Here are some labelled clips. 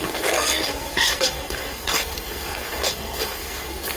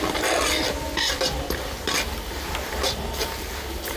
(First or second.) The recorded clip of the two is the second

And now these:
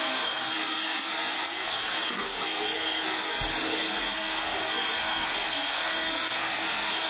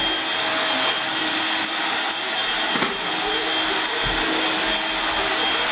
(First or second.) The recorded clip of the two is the second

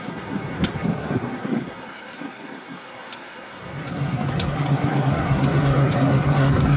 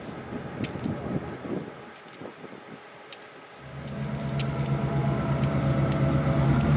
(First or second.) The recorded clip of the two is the second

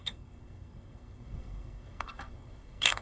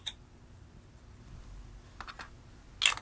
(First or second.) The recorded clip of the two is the second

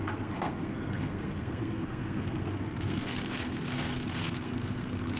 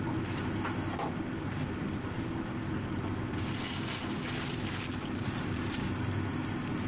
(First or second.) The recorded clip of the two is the second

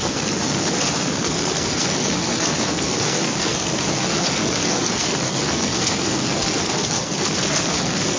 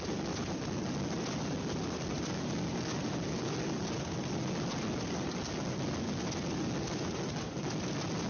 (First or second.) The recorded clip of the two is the second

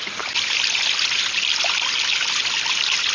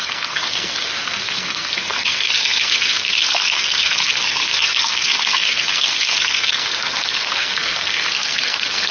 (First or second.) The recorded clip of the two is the first